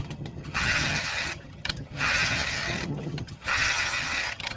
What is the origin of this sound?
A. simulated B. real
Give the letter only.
A